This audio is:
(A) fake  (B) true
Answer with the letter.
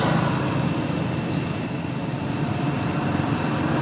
B